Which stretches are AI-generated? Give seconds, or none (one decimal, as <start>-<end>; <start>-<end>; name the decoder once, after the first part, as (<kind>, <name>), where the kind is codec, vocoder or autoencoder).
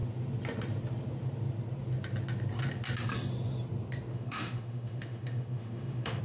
4.1-6.2 (autoencoder, DAC-VAE)